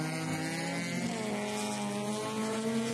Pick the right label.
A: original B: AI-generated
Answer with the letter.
A